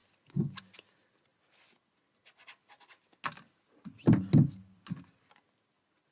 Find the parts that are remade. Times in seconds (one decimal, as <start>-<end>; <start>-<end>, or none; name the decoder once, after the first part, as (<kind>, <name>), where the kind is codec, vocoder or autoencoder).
none

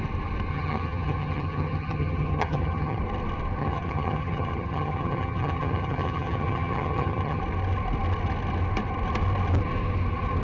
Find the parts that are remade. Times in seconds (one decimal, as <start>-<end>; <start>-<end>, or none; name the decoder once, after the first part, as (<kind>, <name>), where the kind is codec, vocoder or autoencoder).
0.5-3.0 (vocoder, HiFi-GAN); 3.6-7.4

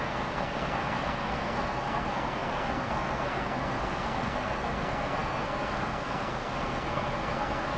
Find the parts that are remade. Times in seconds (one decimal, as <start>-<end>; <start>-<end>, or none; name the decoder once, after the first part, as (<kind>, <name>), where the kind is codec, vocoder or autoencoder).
0.0-7.8 (codec, SNAC)

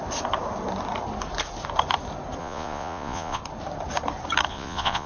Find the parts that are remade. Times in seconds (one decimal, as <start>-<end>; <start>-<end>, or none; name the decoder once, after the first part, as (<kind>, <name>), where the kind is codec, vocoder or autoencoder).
2.4-3.4 (vocoder, Vocos); 4.5-5.1

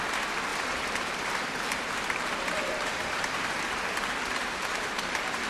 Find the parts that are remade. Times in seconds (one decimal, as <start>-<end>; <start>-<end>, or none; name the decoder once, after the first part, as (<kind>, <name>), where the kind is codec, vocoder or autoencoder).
0.5-3.6 (vocoder, BigVGAN v2); 4.4-5.5